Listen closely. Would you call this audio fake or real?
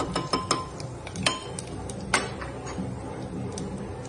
real